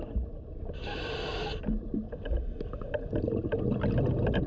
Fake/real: real